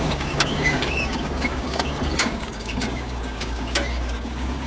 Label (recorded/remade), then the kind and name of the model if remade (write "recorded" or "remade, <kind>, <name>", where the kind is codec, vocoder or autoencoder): remade, codec, DAC